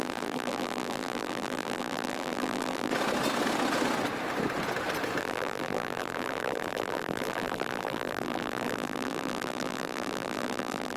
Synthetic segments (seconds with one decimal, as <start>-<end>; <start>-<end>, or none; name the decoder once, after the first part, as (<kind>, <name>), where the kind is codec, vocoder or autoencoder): 0.0-2.9 (vocoder, BigVGAN v2); 5.2-11.0